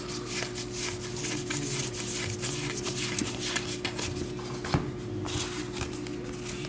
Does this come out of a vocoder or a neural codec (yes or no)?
no